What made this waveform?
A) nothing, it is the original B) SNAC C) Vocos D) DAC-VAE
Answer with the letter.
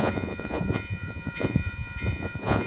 C